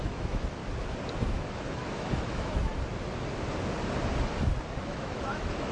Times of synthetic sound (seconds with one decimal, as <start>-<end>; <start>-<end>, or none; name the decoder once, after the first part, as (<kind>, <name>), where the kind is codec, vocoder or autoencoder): 0.0-0.6 (autoencoder, DAC-VAE); 1.2-2.7; 4.8-5.7